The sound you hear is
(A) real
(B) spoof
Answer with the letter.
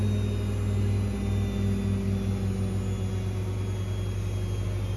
A